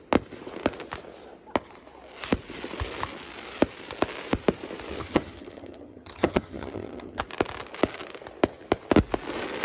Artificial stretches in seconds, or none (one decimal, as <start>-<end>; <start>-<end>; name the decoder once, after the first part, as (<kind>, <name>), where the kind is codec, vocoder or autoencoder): 4.9-7.2 (vocoder, HiFi-GAN)